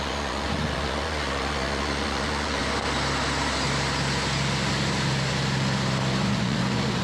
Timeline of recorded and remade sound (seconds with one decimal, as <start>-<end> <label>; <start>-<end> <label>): 0.0-2.6 remade; 2.6-6.2 recorded; 6.2-7.0 remade